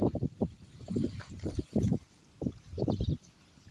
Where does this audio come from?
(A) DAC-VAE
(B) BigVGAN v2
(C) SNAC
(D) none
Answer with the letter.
B